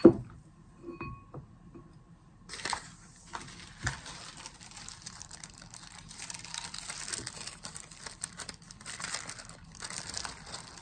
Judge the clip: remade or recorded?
recorded